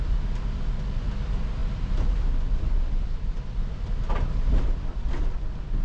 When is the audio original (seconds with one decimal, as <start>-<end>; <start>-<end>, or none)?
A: 0.0-5.8